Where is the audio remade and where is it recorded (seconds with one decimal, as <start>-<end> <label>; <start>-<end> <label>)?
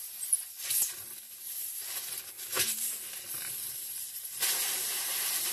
0.0-1.6 recorded; 1.6-4.9 remade; 4.9-5.5 recorded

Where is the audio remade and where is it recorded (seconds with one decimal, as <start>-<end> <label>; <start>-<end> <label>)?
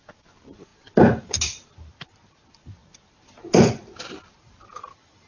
0.0-5.3 recorded